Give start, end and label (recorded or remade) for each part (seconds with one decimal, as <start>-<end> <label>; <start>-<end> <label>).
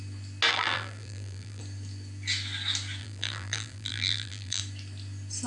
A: 0.0-0.5 recorded; 0.5-1.6 remade; 1.6-3.0 recorded; 3.0-4.6 remade; 4.6-5.5 recorded